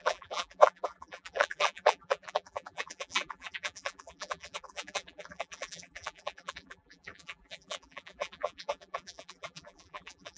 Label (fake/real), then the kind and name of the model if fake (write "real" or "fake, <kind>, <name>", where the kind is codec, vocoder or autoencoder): fake, vocoder, BigVGAN v2